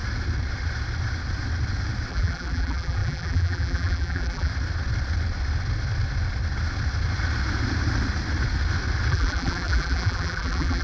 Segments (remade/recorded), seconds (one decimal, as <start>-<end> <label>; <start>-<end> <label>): 0.0-2.1 recorded; 2.1-4.5 remade; 4.5-9.1 recorded; 9.1-10.8 remade